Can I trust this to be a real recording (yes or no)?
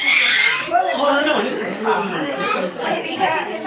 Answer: no